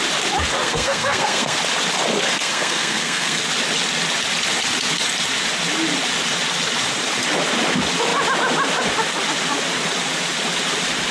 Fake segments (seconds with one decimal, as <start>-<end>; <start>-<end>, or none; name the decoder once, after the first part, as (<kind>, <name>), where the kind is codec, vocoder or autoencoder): 0.6-1.6 (codec, SNAC); 2.3-3.4